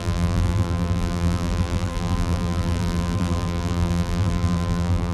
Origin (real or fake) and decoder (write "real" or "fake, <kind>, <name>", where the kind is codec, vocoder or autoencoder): fake, vocoder, BigVGAN v2